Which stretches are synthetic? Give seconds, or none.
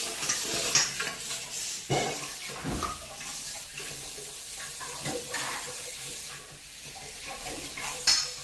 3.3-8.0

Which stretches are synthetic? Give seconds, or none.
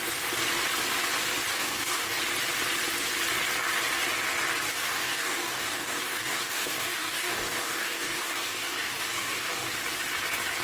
1.5-2.2; 4.7-9.7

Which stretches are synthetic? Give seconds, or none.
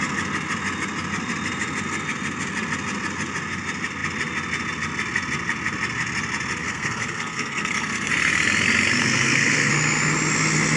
6.6-8.1; 9.0-9.7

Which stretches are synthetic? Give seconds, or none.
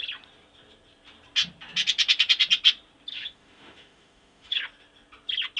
3.1-4.6